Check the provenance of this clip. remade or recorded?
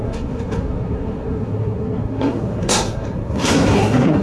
remade